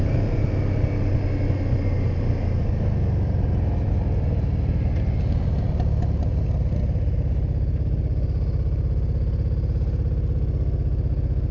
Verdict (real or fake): real